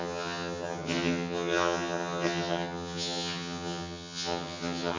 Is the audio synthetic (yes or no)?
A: yes